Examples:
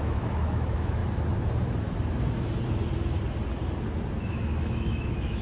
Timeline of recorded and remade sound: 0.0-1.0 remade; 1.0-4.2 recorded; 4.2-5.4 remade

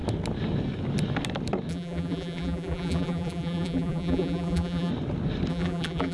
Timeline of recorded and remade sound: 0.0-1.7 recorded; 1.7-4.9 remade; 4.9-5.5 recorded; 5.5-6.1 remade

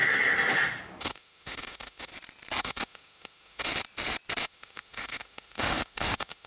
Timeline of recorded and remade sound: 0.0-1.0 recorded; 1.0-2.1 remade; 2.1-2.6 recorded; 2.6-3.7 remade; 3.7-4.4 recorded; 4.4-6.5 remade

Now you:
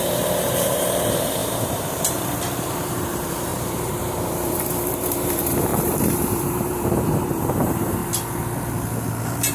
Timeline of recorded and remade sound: 0.0-8.0 remade; 8.0-9.5 recorded

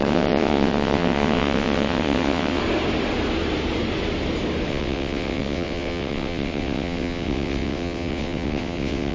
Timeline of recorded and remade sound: 0.0-2.6 remade; 2.6-4.7 recorded; 4.7-9.1 remade

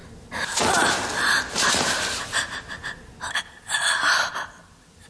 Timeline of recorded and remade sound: 0.0-5.1 recorded